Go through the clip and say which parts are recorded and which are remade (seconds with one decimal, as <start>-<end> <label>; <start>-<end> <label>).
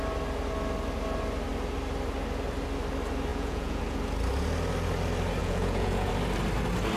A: 0.0-3.3 recorded; 3.3-3.8 remade; 3.8-5.4 recorded; 5.4-6.1 remade; 6.1-7.0 recorded